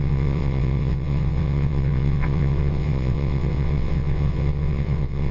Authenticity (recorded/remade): remade